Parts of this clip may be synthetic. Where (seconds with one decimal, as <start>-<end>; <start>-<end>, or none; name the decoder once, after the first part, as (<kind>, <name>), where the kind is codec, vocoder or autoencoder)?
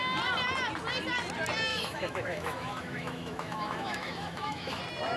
1.7-4.8 (autoencoder, DAC-VAE)